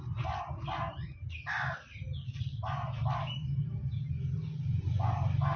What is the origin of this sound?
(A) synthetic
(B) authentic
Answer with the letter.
B